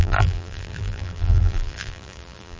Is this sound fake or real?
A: fake